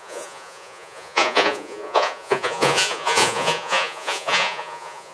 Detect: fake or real fake